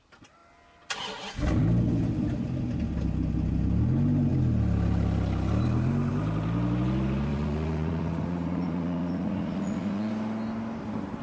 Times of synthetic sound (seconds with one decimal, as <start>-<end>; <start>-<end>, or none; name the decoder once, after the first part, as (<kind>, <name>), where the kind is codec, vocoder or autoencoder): 7.3-10.1 (vocoder, Vocos)